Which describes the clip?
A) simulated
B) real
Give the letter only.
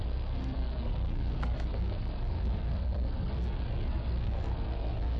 A